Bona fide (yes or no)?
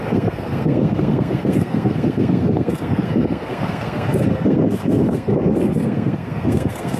no